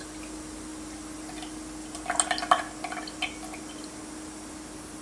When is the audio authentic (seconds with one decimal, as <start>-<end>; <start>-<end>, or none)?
0.0-5.0